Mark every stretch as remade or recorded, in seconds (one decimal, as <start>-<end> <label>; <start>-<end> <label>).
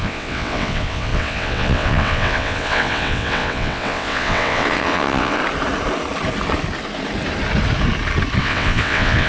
0.0-5.4 remade; 5.4-8.4 recorded; 8.4-9.3 remade